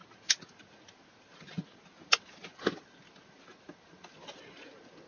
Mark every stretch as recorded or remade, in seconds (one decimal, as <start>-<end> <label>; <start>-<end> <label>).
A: 0.0-5.1 recorded